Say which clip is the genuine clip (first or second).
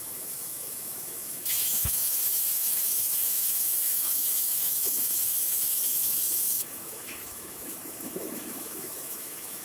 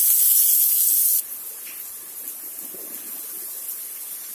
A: second